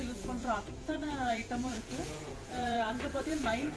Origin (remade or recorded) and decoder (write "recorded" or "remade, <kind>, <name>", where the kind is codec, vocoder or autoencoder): remade, vocoder, Vocos